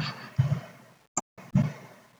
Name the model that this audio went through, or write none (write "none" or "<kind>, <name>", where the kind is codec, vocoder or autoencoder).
none